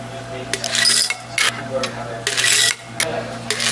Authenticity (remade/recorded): recorded